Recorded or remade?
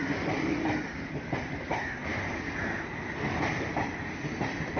remade